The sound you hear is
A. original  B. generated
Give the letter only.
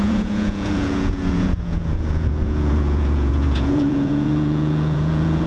B